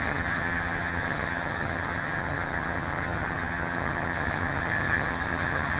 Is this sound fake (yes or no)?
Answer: yes